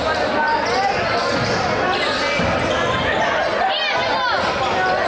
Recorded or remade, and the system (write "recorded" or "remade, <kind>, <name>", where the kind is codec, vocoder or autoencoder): recorded